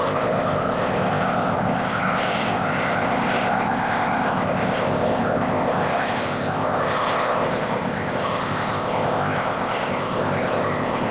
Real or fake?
fake